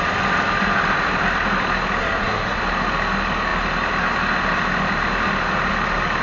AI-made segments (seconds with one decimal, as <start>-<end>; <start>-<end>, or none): 2.0-2.6